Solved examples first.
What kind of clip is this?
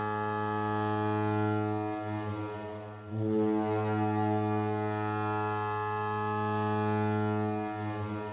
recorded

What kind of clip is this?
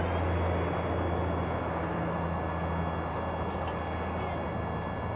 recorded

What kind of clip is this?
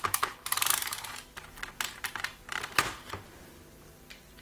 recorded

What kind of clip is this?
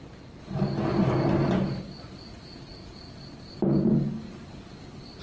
recorded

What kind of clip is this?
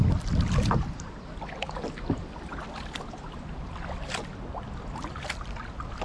recorded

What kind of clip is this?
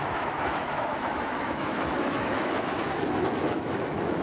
remade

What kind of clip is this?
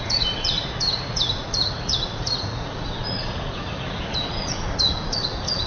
remade